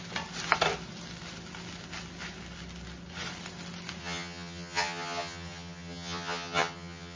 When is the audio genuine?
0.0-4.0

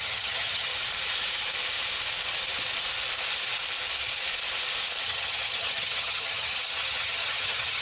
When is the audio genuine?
0.7-5.0

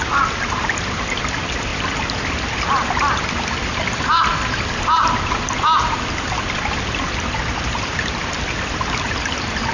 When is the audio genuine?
0.0-9.7